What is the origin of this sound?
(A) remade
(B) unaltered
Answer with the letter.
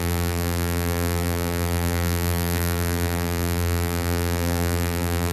A